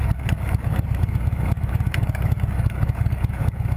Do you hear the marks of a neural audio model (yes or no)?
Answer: yes